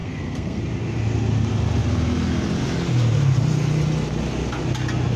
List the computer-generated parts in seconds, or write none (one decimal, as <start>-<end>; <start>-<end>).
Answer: 0.0-0.6